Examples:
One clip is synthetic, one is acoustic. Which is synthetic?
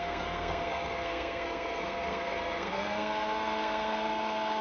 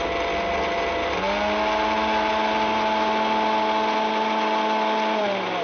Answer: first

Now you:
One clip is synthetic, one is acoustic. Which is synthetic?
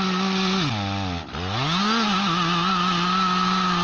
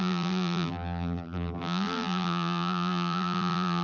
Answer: second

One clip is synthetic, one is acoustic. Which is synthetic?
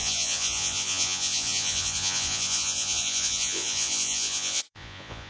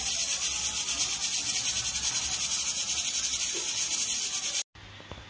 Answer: first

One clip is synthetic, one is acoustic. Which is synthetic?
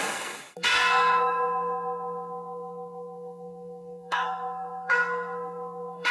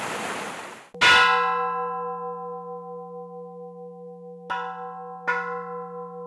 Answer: first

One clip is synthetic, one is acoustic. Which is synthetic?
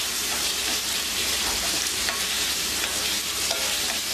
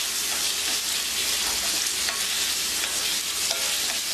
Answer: first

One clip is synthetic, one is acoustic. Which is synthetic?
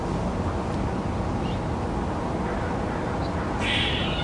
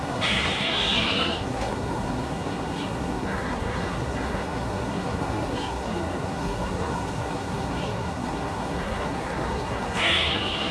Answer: second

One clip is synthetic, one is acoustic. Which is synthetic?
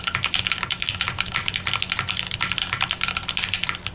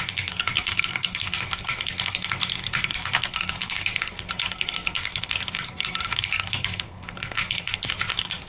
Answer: second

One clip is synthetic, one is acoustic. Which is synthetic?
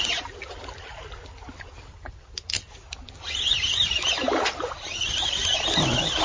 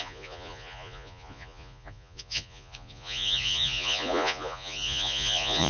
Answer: second